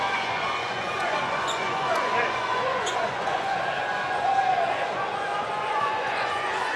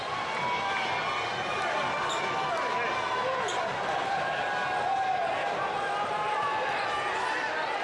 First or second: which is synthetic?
first